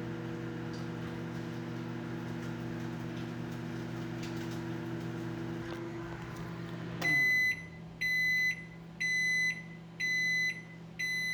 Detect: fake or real real